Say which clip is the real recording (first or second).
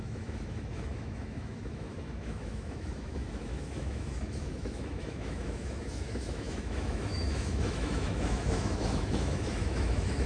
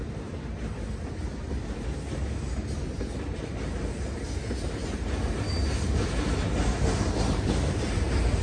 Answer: second